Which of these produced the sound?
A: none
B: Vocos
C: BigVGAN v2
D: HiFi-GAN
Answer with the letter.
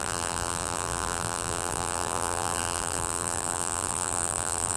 C